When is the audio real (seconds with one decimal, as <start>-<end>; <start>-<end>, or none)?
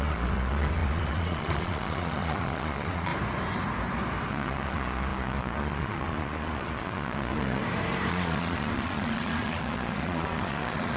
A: 3.1-4.3; 7.6-8.1